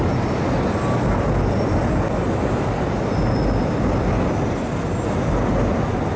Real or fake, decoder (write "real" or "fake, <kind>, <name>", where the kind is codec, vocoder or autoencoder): real